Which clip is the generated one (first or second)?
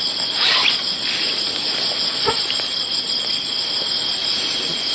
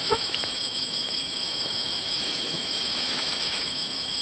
second